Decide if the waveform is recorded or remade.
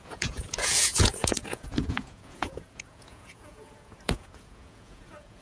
remade